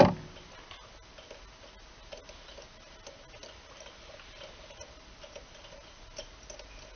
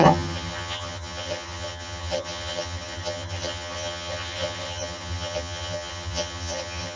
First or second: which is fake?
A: second